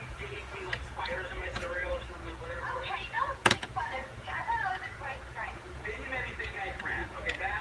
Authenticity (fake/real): fake